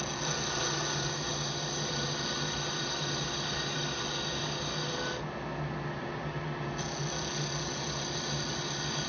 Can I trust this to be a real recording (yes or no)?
yes